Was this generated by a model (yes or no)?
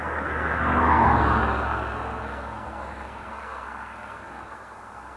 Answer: yes